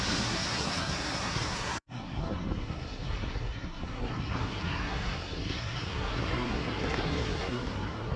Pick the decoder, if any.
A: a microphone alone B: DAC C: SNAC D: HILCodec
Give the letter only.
C